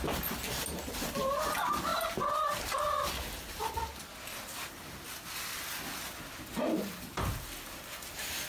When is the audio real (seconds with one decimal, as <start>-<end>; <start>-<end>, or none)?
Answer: 0.0-8.5